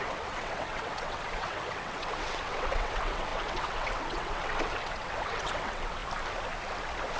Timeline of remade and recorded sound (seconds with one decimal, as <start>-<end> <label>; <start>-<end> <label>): 0.0-6.0 remade; 6.0-7.2 recorded